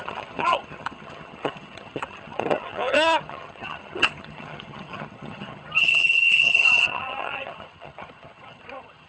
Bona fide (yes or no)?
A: no